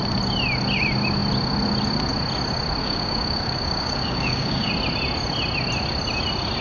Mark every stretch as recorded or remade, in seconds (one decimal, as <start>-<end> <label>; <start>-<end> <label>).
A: 0.0-2.8 recorded; 2.8-4.7 remade; 4.7-6.6 recorded